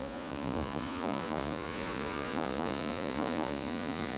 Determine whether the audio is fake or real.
fake